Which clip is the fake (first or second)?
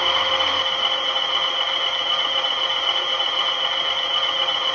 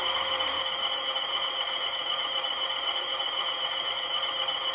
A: second